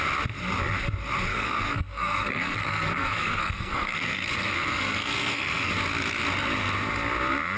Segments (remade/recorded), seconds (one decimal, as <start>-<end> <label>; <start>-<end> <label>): 0.0-1.3 recorded; 1.3-5.7 remade; 5.7-7.6 recorded